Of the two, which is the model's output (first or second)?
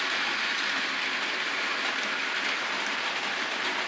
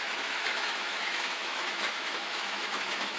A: second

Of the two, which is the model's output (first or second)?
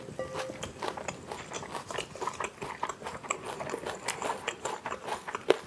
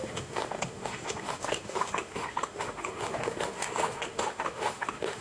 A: second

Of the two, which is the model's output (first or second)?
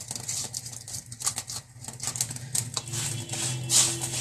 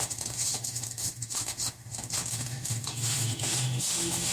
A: second